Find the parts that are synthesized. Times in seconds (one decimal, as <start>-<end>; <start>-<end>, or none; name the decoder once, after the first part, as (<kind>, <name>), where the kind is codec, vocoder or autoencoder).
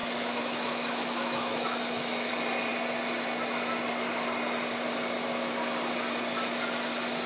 0.0-2.3 (autoencoder, DAC-VAE)